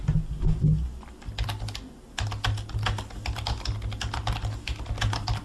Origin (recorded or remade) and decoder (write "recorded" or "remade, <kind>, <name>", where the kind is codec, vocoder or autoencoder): recorded